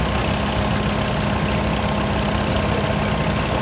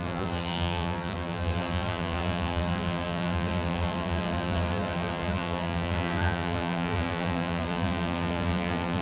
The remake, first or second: second